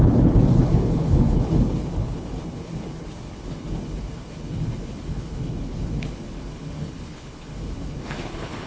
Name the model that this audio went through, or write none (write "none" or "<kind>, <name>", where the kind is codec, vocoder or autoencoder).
codec, HILCodec